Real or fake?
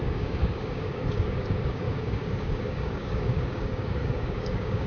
fake